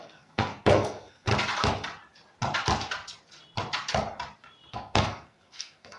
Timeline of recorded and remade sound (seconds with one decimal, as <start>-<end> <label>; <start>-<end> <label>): 0.0-1.3 remade; 1.3-4.7 recorded; 4.7-6.0 remade